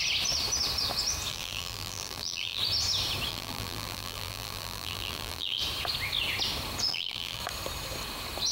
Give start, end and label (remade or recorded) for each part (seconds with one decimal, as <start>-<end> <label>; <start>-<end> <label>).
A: 0.0-1.3 recorded; 1.3-2.6 remade; 2.6-3.3 recorded; 3.3-5.6 remade; 5.6-6.9 recorded; 6.9-7.4 remade; 7.4-8.5 recorded